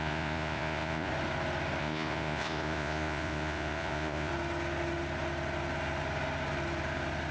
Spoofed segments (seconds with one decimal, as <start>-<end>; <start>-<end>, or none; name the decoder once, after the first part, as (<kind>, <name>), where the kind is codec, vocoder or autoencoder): 0.0-1.1 (vocoder, Vocos); 1.8-4.3